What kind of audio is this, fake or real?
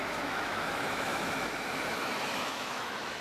fake